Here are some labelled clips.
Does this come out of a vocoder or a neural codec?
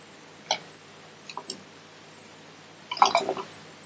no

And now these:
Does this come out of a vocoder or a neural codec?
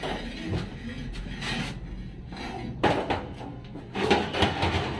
no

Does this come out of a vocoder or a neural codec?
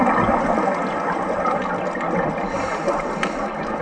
no